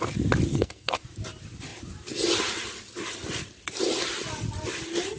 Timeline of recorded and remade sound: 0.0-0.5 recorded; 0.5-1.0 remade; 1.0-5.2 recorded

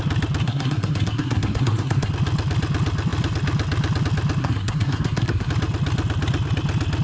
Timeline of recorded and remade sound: 0.0-0.4 recorded; 0.4-2.1 remade; 2.1-4.4 recorded; 4.4-5.5 remade; 5.5-7.0 recorded

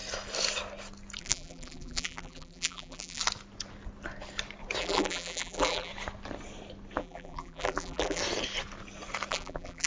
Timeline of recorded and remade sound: 0.0-1.2 recorded; 1.2-3.2 remade; 3.2-4.8 recorded; 4.8-5.9 remade; 5.9-7.0 recorded; 7.0-8.2 remade; 8.2-9.3 recorded; 9.3-9.9 remade